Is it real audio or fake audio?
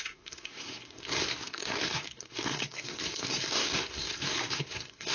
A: fake